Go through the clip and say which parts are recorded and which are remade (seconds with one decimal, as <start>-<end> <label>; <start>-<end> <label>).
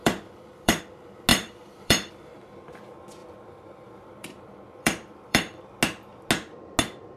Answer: 0.0-0.8 remade; 0.8-1.3 recorded; 1.3-2.1 remade; 2.1-3.2 recorded; 3.2-5.6 remade; 5.6-7.2 recorded